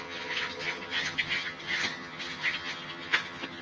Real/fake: fake